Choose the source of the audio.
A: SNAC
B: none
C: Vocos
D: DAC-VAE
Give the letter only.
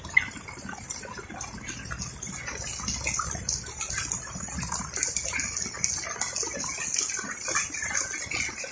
B